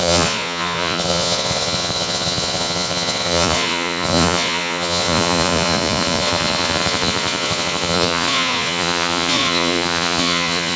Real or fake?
fake